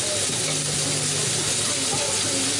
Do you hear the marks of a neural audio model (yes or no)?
no